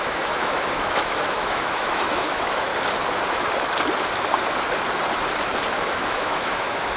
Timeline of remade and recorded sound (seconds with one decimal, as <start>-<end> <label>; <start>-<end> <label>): 0.0-2.7 remade; 2.7-5.7 recorded; 5.7-7.0 remade